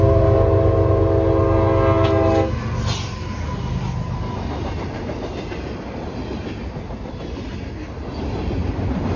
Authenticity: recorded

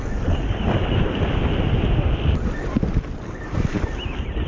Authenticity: recorded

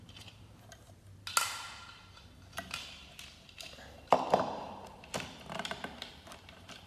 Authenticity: recorded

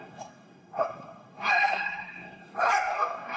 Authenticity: remade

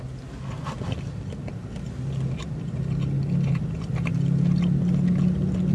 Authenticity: recorded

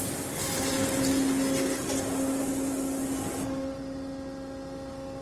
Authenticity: recorded